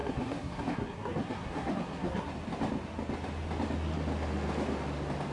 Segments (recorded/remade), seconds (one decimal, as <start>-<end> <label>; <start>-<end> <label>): 0.0-2.3 remade; 2.3-5.3 recorded